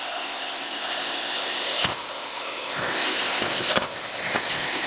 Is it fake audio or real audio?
fake